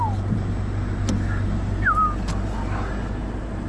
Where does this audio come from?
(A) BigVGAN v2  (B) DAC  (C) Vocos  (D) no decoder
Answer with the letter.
D